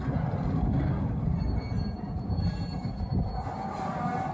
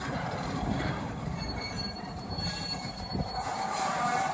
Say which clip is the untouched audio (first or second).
first